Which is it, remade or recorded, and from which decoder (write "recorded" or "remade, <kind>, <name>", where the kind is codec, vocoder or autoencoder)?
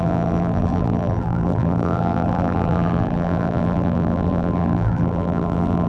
remade, vocoder, BigVGAN v2